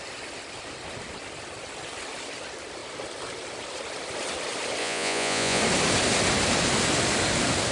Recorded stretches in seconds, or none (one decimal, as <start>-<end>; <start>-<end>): 0.0-4.8; 5.6-7.7